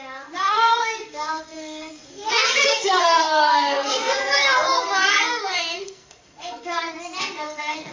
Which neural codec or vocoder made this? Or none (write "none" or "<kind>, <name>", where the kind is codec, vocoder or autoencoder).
codec, SNAC